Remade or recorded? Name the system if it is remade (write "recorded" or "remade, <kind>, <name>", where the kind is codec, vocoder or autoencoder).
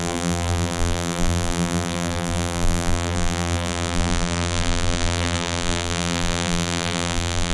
remade, vocoder, BigVGAN v2